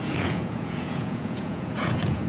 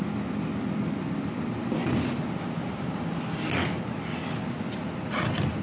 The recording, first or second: second